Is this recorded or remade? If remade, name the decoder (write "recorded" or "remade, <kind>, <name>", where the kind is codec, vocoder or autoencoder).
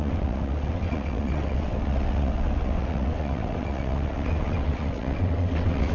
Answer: remade, vocoder, WaveNeXt